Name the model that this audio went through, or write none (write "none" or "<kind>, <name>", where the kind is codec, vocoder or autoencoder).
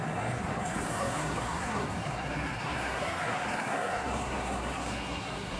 codec, SNAC